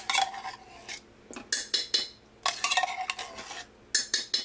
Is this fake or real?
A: real